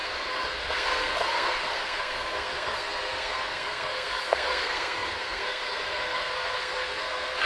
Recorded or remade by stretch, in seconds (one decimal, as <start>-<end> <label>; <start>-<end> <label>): 0.0-7.5 remade